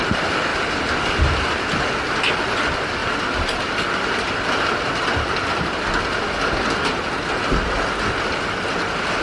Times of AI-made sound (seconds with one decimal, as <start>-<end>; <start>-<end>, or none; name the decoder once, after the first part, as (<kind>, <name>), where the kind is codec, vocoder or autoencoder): none